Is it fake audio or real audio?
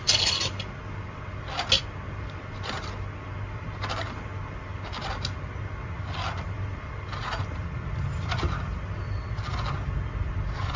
real